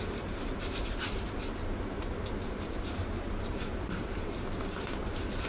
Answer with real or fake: fake